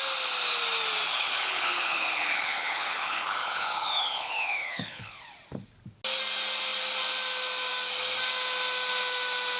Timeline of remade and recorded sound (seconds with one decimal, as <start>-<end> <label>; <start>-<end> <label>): 0.0-1.1 recorded; 1.1-5.2 remade; 5.2-9.6 recorded